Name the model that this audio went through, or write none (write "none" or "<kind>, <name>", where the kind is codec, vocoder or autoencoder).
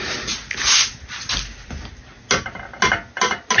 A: none